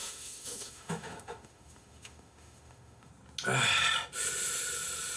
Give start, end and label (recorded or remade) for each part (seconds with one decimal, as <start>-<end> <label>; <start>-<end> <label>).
0.0-3.1 remade; 3.1-5.2 recorded